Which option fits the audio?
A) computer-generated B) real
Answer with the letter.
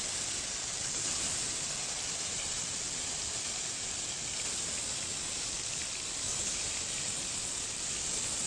B